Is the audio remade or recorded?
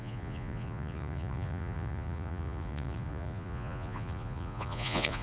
remade